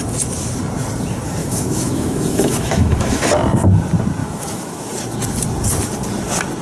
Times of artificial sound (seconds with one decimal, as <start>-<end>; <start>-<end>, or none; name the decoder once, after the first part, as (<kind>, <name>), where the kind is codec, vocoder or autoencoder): 1.4-3.3 (autoencoder, DAC-VAE); 4.2-4.9